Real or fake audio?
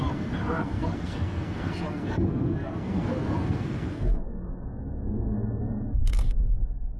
fake